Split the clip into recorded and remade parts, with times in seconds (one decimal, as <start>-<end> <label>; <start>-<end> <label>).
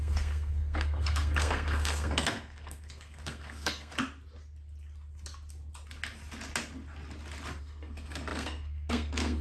0.0-3.9 remade; 3.9-7.6 recorded; 7.6-9.4 remade